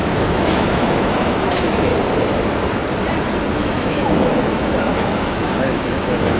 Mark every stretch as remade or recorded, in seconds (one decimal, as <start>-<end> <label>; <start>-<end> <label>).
0.0-1.9 remade; 1.9-3.5 recorded; 3.5-6.4 remade